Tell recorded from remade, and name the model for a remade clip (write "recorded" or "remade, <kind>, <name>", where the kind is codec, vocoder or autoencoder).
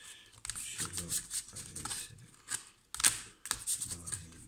recorded